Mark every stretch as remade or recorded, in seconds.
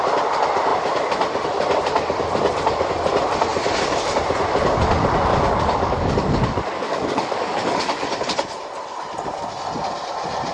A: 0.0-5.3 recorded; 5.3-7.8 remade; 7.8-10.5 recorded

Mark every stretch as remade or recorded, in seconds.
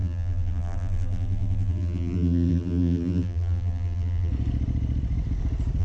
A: 0.0-4.3 remade; 4.3-5.8 recorded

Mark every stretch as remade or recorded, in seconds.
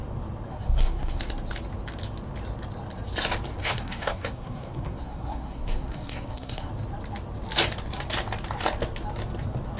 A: 0.0-0.5 recorded; 0.5-1.2 remade; 1.2-3.6 recorded; 3.6-6.7 remade; 6.7-9.8 recorded